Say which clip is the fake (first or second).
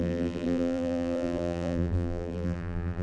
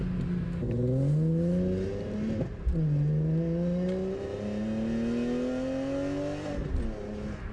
first